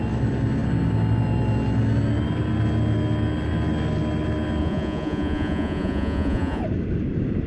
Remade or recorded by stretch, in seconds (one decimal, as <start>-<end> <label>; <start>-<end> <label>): 0.0-4.6 recorded; 4.6-6.6 remade; 6.6-7.5 recorded